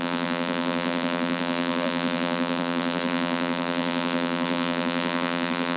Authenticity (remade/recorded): remade